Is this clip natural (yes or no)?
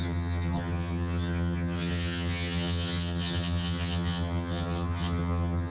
no